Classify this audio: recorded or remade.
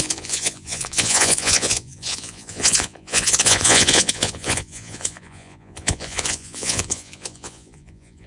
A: remade